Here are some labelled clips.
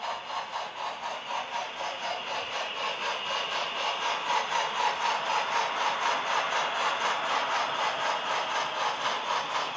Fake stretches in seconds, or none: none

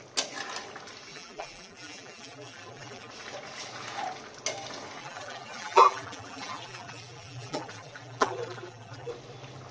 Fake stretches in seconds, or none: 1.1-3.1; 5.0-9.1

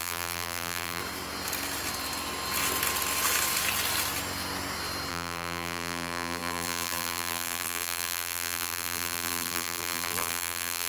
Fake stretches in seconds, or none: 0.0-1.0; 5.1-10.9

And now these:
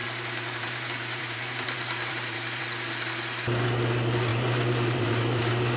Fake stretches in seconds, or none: 0.0-2.6; 4.3-5.8

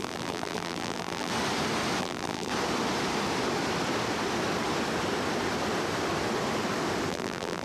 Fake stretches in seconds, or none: 0.0-1.3; 2.0-2.5; 7.1-7.6

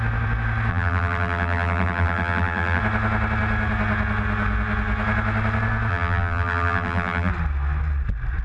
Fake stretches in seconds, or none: 0.7-2.8; 5.9-7.3

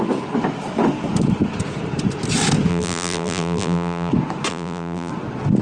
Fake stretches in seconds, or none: 2.7-4.1; 4.5-5.1